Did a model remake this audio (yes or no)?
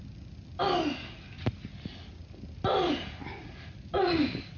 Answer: no